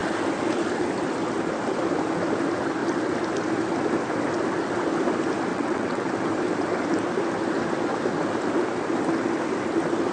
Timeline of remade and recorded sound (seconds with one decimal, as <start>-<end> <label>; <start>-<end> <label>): 0.0-5.5 recorded; 5.5-6.1 remade; 6.1-10.1 recorded

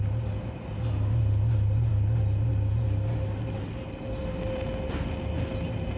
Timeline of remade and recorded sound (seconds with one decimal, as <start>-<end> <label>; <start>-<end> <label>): 0.0-6.0 recorded

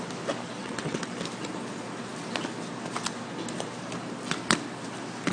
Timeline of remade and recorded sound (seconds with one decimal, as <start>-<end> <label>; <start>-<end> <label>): 0.0-0.6 recorded; 0.6-1.1 remade; 1.1-5.3 recorded